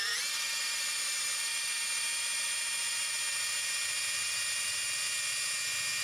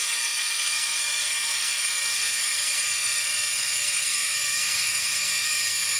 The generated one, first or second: second